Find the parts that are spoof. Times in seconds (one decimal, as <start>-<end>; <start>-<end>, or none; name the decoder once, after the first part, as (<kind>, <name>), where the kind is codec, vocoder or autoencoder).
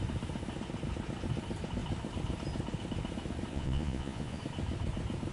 3.5-4.4 (vocoder, Vocos)